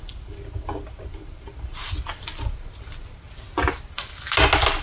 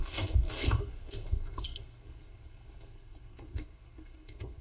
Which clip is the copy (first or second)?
second